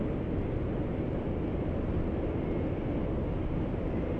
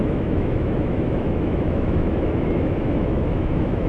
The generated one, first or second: second